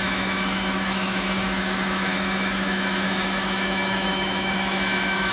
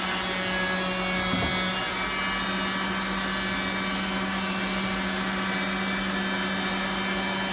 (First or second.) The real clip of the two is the second